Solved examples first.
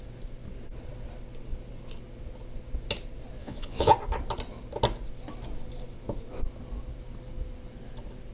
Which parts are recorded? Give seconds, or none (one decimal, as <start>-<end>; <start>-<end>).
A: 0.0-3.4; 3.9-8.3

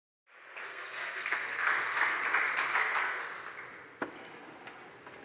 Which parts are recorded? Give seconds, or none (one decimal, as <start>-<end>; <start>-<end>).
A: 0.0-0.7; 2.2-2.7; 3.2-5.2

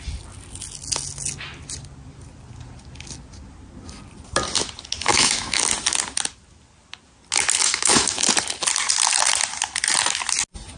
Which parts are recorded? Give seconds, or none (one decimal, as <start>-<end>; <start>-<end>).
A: 0.0-5.1; 5.7-7.6; 8.2-10.8

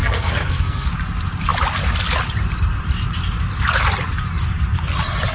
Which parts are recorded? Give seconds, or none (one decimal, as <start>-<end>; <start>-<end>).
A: 0.9-5.3

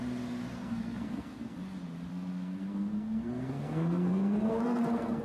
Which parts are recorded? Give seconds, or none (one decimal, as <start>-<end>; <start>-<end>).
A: 0.0-0.5; 1.6-2.1